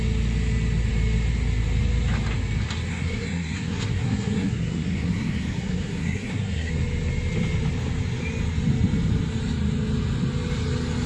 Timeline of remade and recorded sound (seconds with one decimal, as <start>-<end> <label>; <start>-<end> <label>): 0.0-2.9 recorded; 2.9-6.7 remade; 6.7-11.1 recorded